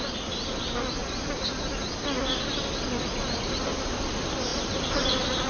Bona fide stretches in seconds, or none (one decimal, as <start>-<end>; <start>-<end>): 0.0-5.5